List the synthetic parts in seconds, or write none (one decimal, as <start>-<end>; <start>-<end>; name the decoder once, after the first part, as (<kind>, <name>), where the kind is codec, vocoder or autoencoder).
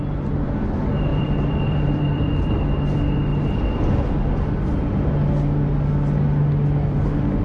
1.1-2.4 (vocoder, BigVGAN v2)